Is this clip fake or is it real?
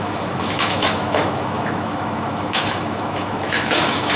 fake